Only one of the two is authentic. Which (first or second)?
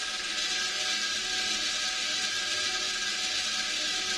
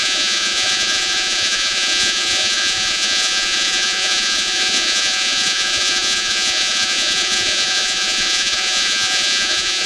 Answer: first